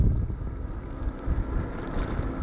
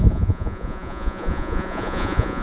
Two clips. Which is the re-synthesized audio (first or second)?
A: second